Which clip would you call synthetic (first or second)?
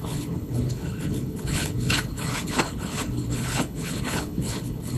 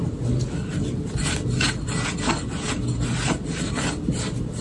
first